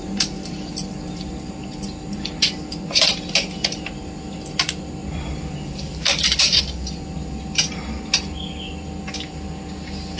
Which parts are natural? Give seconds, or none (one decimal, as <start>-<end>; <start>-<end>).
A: 0.0-5.0; 6.6-10.2